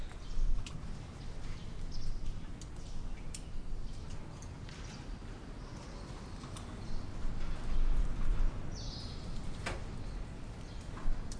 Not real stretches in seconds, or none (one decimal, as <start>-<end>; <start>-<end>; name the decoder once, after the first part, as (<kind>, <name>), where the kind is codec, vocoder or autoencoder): none